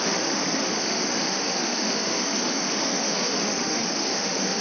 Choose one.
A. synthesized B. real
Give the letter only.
A